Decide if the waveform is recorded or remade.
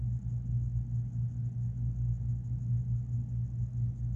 recorded